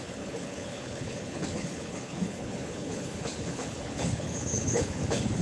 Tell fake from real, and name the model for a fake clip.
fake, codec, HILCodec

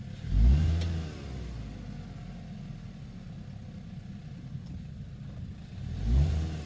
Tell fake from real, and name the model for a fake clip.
real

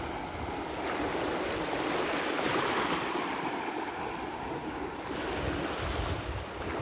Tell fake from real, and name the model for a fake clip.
real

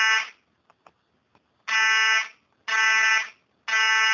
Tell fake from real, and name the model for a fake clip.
real